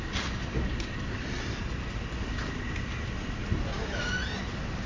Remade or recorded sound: recorded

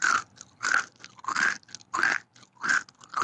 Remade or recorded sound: recorded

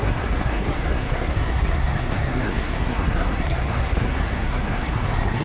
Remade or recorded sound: remade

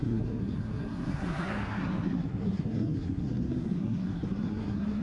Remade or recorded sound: remade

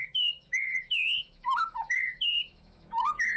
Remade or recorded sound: remade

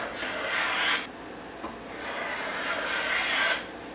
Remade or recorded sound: recorded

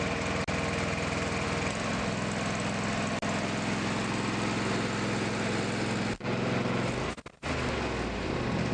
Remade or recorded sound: recorded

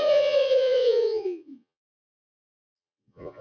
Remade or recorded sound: remade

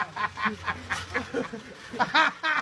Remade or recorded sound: recorded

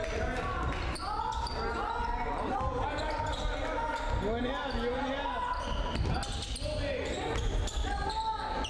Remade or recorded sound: recorded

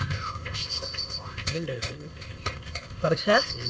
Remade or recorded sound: remade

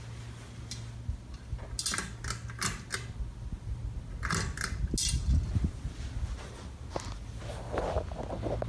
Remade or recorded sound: recorded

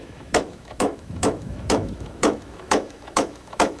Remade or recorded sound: remade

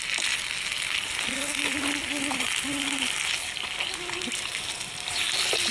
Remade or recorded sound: recorded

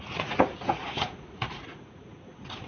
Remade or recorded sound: remade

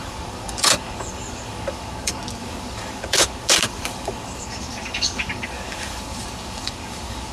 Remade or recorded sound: remade